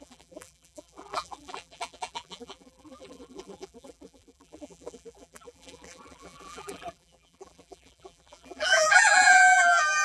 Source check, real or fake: fake